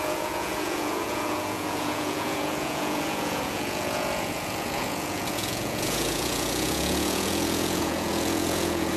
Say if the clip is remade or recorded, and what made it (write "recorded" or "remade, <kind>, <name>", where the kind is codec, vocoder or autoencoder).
remade, vocoder, Vocos